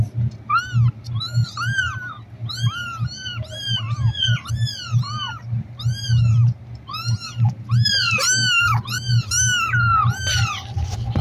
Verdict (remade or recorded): recorded